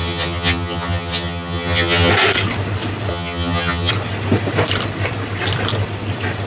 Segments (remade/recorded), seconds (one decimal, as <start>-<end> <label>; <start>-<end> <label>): 0.0-2.1 remade; 2.1-3.1 recorded; 3.1-3.9 remade; 3.9-6.5 recorded